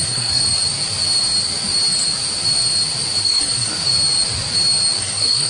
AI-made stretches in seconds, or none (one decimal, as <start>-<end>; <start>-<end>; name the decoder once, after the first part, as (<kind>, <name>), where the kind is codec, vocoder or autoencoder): 0.0-0.4 (codec, SNAC); 3.2-3.7; 5.0-5.5

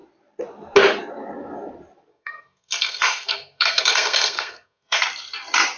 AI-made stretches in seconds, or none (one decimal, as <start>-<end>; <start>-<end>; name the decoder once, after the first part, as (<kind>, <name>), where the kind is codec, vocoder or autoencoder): 2.1-5.0 (codec, SNAC)

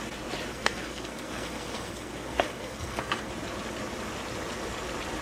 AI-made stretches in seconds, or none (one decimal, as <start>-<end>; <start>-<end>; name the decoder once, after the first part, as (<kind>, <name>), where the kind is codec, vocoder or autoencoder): 0.5-3.3 (codec, SNAC)

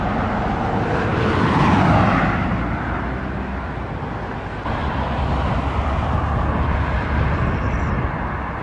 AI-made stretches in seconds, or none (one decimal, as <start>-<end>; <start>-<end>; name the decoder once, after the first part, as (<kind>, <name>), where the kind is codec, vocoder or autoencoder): none